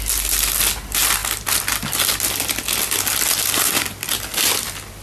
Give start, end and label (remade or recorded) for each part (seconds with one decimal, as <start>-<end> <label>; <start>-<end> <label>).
0.0-5.0 recorded